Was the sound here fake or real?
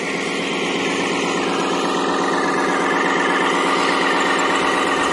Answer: real